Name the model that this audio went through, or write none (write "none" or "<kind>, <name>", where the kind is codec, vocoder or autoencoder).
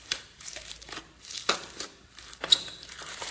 vocoder, BigVGAN v2